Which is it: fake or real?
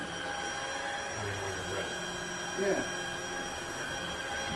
real